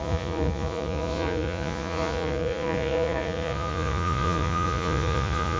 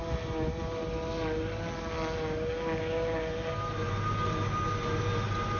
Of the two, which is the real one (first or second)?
second